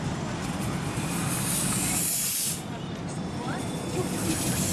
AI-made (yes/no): no